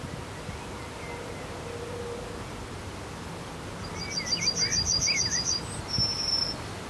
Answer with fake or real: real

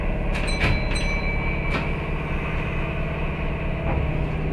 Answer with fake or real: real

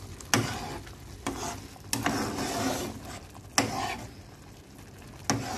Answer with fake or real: real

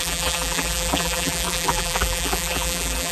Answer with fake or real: fake